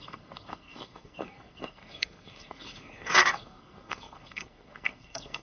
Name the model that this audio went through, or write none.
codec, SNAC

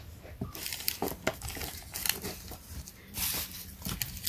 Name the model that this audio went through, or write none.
none